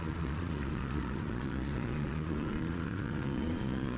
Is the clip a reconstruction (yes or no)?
yes